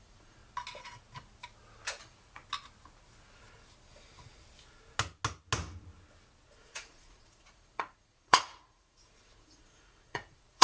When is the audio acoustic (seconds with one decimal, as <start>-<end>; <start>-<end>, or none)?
0.4-2.0; 2.4-6.7

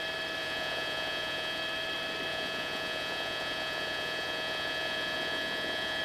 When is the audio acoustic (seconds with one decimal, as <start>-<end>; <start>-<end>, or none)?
0.0-0.4; 1.6-2.3

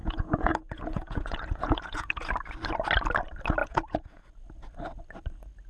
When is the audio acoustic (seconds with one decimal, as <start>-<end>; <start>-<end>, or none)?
2.3-3.6; 4.2-5.7

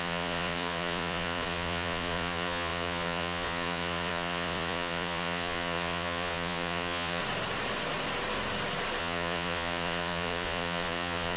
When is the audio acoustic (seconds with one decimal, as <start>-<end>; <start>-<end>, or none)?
7.2-9.0

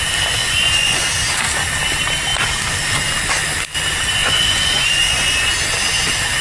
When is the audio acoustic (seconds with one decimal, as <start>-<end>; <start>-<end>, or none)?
0.0-0.4; 1.1-4.2; 5.5-6.4

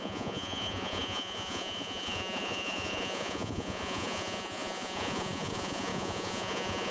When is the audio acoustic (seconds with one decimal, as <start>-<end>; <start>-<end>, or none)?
none

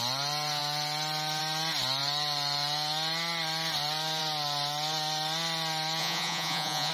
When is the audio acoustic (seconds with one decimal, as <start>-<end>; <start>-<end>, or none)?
0.0-6.0